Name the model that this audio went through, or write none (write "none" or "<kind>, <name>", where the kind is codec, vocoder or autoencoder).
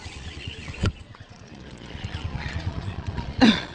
vocoder, Vocos